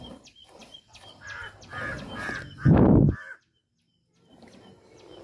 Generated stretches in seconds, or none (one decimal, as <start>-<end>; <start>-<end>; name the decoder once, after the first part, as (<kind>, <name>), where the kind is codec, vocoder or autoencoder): 0.6-3.6 (vocoder, BigVGAN v2)